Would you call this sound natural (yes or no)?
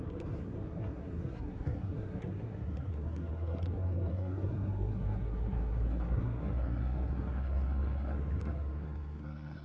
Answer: no